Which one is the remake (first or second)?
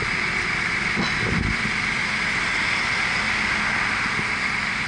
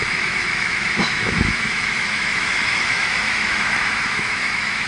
second